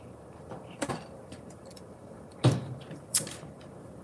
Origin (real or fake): fake